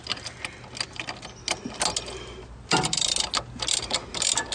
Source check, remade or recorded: recorded